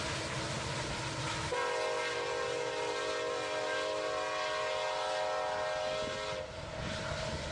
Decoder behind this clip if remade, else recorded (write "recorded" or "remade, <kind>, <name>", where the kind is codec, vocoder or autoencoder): recorded